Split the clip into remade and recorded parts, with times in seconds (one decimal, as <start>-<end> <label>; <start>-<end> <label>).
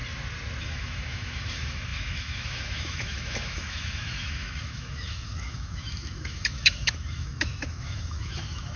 0.0-0.6 recorded; 0.6-8.8 remade